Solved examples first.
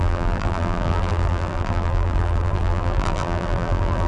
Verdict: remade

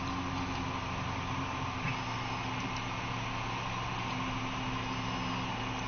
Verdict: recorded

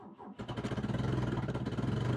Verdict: recorded